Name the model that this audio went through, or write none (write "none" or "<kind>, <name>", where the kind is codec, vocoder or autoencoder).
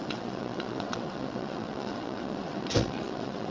vocoder, WaveNeXt